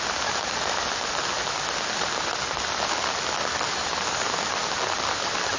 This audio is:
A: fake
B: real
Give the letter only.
B